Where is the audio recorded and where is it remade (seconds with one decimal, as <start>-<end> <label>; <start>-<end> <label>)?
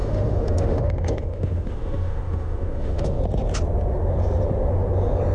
0.0-3.2 remade; 3.2-5.3 recorded